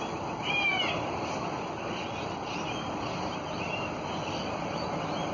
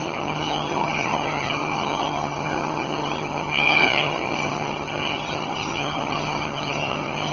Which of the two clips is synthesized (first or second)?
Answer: second